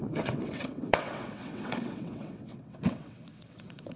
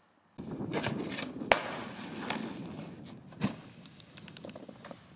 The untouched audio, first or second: second